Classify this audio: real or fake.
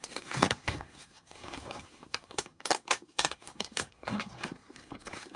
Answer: fake